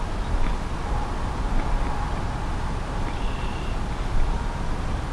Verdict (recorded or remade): recorded